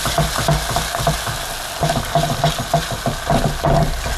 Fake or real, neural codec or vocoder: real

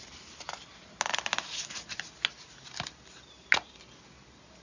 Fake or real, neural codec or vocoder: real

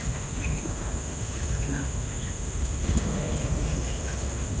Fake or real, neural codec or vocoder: fake, autoencoder, DAC-VAE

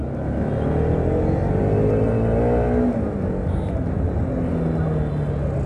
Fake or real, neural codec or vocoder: real